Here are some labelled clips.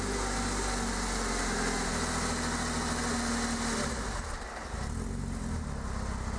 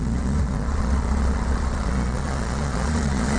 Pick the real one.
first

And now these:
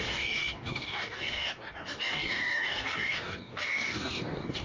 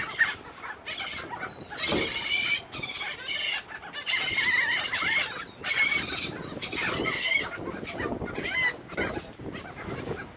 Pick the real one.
second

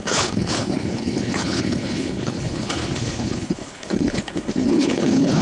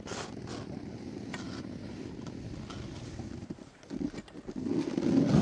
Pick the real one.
second